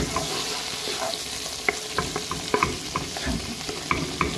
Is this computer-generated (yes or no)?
no